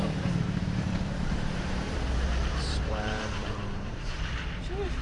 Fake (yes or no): yes